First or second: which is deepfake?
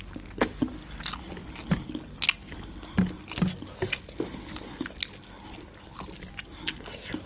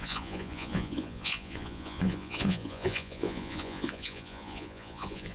second